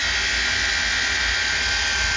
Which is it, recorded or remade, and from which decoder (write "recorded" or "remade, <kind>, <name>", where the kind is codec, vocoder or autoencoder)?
recorded